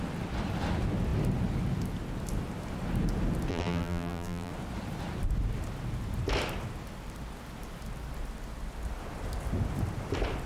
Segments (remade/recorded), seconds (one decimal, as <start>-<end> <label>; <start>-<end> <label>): 0.0-3.5 recorded; 3.5-4.5 remade; 4.5-10.5 recorded